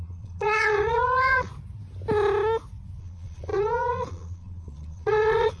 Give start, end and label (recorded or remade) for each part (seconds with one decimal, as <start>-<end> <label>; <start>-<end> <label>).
0.0-1.5 remade; 1.5-3.0 recorded; 3.0-5.6 remade